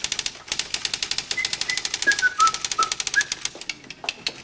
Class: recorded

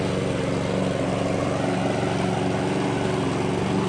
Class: recorded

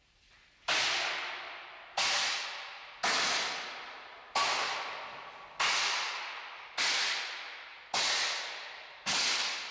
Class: recorded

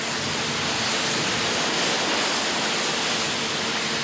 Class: recorded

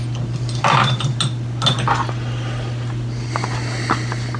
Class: recorded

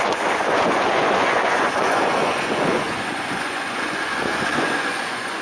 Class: remade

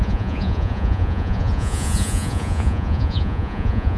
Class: remade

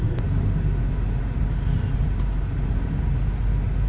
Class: recorded